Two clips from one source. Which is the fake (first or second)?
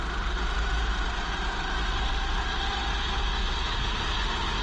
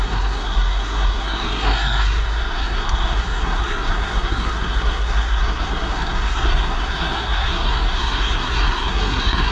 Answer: second